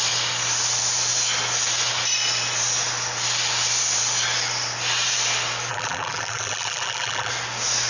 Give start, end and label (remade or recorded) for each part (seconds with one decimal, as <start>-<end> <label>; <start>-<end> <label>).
0.0-5.7 recorded; 5.7-7.3 remade; 7.3-7.9 recorded